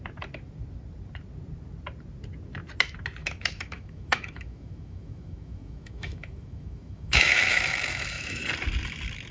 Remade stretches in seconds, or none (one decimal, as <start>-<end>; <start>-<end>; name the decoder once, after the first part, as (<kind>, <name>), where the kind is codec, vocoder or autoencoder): 3.2-8.4 (autoencoder, DAC-VAE)